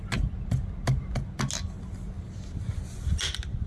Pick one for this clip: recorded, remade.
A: recorded